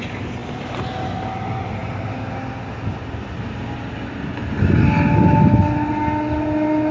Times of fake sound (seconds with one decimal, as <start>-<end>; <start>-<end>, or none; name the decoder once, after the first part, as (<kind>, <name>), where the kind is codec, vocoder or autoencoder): none